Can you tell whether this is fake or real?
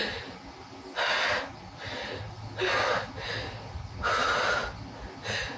real